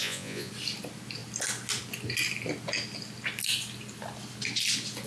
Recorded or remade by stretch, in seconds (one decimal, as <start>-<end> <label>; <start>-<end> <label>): 0.0-0.5 remade; 0.5-5.1 recorded